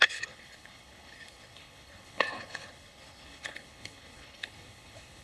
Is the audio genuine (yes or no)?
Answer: no